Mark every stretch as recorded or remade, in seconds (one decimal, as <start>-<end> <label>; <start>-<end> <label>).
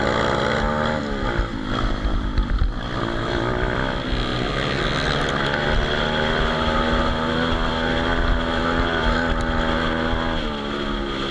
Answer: 0.0-11.3 recorded